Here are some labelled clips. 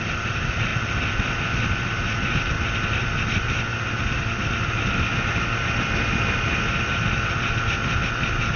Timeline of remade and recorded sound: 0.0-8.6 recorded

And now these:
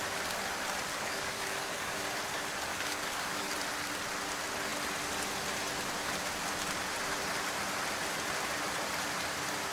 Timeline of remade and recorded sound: 0.0-0.9 recorded; 0.9-2.0 remade; 2.0-2.7 recorded; 2.7-3.5 remade; 3.5-9.7 recorded

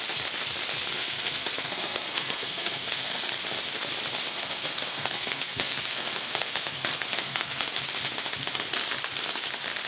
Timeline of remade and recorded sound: 0.0-1.0 recorded; 1.0-3.3 remade; 3.3-4.3 recorded; 4.3-7.7 remade; 7.7-9.9 recorded

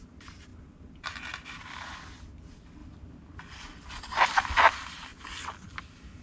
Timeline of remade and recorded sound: 0.0-6.2 recorded

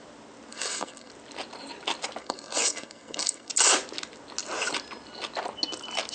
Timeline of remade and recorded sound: 0.0-0.5 recorded; 0.5-1.1 remade; 1.1-2.2 recorded; 2.2-3.5 remade; 3.5-6.1 recorded

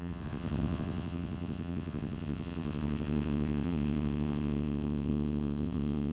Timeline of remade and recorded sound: 0.0-6.1 remade